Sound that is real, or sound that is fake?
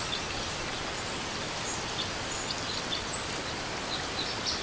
real